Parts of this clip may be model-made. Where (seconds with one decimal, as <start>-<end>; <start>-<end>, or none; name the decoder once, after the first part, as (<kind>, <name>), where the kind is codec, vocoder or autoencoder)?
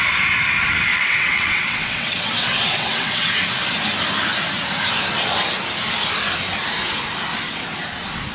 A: 0.9-3.3 (vocoder, WaveNeXt)